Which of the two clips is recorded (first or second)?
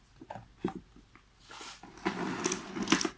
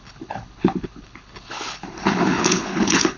first